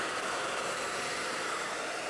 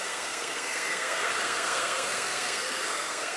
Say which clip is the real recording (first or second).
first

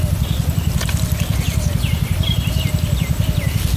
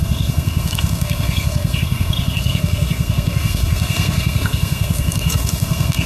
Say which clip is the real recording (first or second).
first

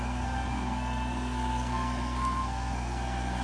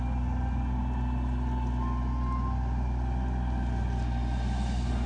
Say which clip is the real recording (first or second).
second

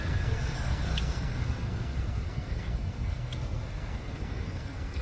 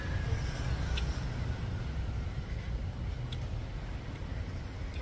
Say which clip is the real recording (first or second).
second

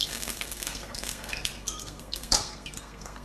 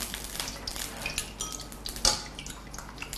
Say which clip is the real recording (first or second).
second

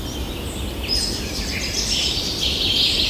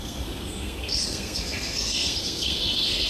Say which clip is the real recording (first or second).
first